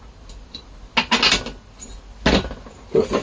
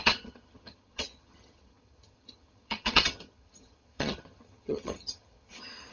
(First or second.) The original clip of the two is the first